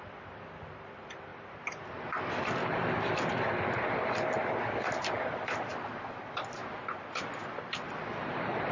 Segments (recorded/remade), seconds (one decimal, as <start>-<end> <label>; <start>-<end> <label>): 0.0-1.3 remade; 1.3-1.8 recorded; 1.8-6.6 remade; 6.6-7.6 recorded; 7.6-8.7 remade